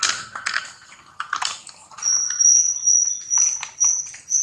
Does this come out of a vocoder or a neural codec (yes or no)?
no